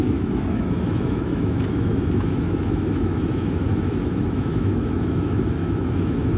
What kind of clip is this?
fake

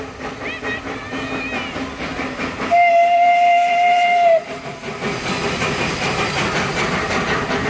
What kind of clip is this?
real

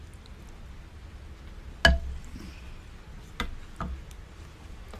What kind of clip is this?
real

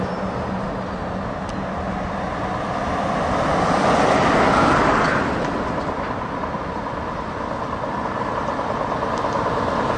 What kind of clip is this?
real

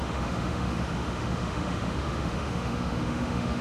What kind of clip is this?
fake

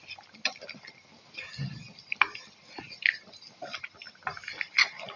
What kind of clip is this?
real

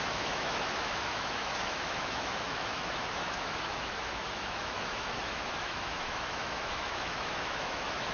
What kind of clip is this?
fake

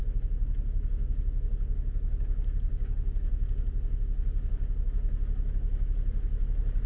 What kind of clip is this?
real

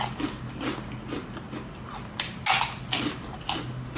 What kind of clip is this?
real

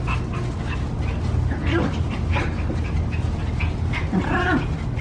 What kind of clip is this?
real